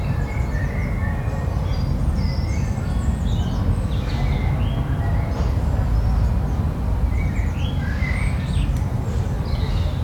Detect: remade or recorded recorded